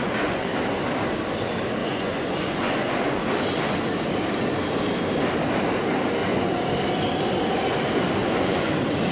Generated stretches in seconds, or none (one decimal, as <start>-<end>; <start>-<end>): 0.0-0.5; 1.8-3.2; 6.2-6.7; 8.2-8.7